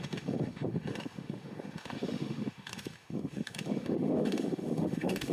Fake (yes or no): yes